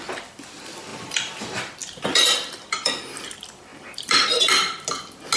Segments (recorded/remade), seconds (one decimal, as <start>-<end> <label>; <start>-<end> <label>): 0.0-0.9 recorded; 0.9-1.4 remade; 1.4-1.8 recorded; 1.8-3.0 remade; 3.0-3.7 recorded; 3.7-4.7 remade; 4.7-5.4 recorded